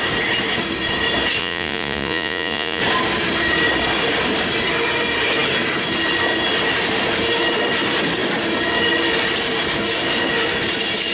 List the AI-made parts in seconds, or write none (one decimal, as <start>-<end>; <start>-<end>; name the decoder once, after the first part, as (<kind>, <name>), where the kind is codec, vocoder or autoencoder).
1.4-2.8 (vocoder, Vocos)